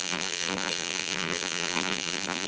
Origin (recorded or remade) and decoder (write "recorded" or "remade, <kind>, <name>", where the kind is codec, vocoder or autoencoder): remade, vocoder, BigVGAN v2